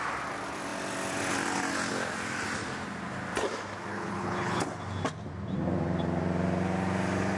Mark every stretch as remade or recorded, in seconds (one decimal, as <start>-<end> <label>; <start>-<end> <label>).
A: 0.0-3.9 recorded; 3.9-4.6 remade; 4.6-7.4 recorded